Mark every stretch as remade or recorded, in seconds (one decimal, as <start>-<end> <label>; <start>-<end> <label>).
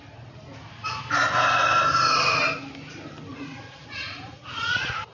0.0-3.3 recorded; 3.3-5.1 remade